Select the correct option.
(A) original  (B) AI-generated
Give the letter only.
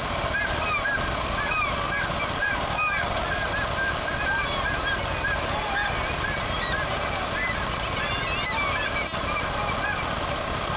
A